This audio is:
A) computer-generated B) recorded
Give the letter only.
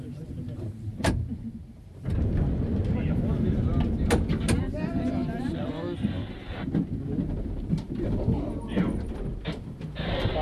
B